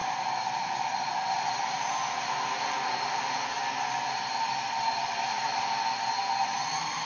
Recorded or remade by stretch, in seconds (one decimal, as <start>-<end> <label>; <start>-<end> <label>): 0.0-7.0 recorded